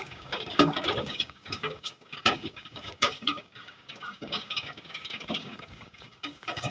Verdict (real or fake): fake